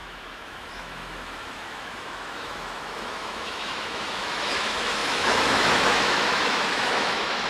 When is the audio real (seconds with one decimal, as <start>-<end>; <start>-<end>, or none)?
none